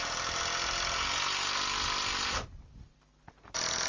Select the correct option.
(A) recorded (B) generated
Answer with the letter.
A